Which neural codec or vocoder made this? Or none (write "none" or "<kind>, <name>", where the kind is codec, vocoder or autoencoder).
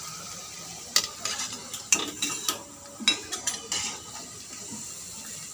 none